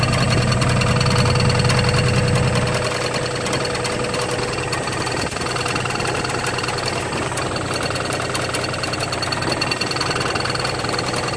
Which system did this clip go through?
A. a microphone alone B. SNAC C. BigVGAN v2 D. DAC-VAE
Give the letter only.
A